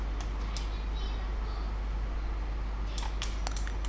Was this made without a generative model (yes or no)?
yes